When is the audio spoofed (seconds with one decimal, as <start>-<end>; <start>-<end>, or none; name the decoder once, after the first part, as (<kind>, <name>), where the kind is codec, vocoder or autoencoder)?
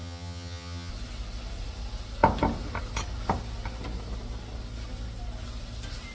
0.0-0.9 (vocoder, HiFi-GAN)